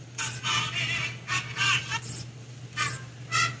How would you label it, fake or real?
real